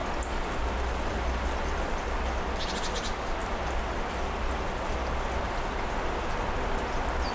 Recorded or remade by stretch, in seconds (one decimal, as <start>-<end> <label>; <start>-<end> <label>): 0.0-7.3 recorded